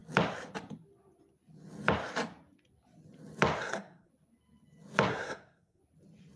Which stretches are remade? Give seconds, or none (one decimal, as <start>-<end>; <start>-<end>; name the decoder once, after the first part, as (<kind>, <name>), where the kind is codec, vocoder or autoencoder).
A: 3.6-4.1 (codec, SNAC); 5.1-5.8